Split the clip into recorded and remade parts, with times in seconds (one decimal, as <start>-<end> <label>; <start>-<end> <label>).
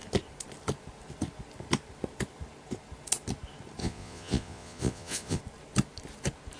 0.0-3.8 recorded; 3.8-5.4 remade; 5.4-6.6 recorded